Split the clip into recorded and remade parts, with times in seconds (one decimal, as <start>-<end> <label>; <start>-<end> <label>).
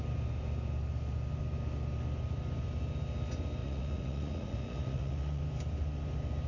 0.0-3.6 recorded; 3.6-5.4 remade; 5.4-6.5 recorded